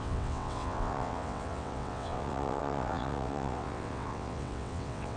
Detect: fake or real fake